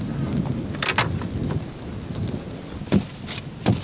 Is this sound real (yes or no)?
yes